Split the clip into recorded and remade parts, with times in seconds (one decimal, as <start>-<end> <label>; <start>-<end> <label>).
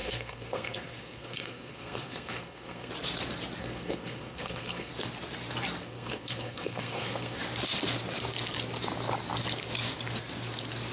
0.0-2.9 remade; 2.9-3.6 recorded; 3.6-4.9 remade; 4.9-5.8 recorded; 5.8-7.4 remade; 7.4-10.9 recorded